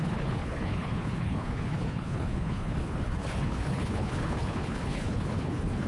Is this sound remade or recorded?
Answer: remade